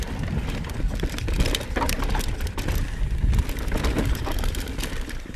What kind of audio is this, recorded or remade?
recorded